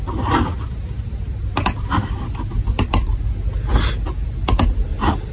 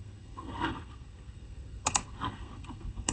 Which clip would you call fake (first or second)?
second